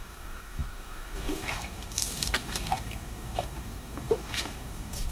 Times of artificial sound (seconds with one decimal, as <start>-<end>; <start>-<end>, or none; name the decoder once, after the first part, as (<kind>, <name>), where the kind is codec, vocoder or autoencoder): 0.0-5.1 (codec, DAC)